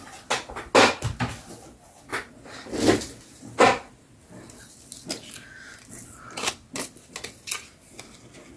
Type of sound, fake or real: real